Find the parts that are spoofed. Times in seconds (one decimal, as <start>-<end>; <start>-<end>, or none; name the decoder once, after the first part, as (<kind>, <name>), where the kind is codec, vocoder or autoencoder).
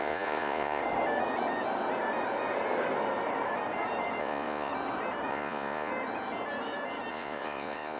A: 0.0-0.8 (vocoder, Vocos); 4.2-4.7; 5.3-5.9; 7.1-8.0